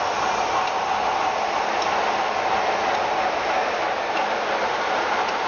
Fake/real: real